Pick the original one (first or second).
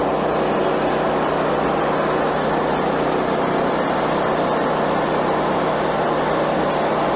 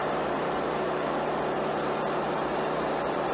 first